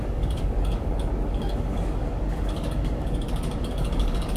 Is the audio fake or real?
fake